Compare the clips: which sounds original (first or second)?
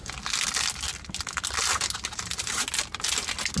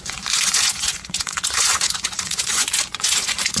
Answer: first